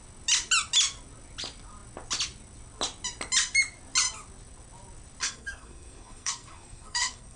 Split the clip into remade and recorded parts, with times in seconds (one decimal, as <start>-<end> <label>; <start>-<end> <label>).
0.0-5.2 recorded; 5.2-7.4 remade